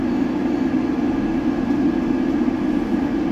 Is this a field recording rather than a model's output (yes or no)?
yes